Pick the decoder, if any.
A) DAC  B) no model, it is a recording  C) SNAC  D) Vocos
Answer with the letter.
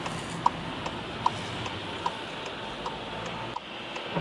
B